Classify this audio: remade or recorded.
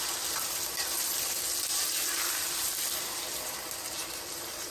recorded